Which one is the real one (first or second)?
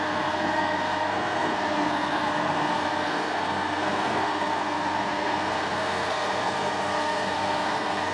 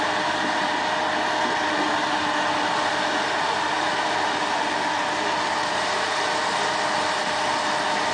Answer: second